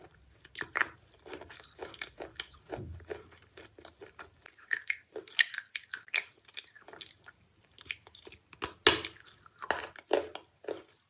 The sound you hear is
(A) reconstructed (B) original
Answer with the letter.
B